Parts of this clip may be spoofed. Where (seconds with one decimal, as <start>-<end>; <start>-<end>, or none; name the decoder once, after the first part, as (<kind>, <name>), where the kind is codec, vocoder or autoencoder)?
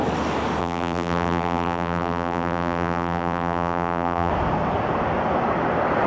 0.6-4.3 (vocoder, BigVGAN v2)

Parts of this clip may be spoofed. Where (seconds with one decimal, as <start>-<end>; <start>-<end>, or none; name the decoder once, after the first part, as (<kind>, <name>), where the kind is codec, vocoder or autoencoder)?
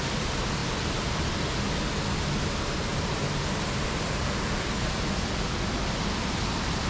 0.6-1.3 (vocoder, BigVGAN v2); 2.9-4.4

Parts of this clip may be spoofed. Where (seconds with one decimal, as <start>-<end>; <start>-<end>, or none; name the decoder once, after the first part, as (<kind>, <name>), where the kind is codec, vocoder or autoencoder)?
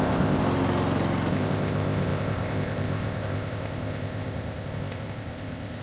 0.0-0.4 (codec, ZipCodec); 1.3-5.8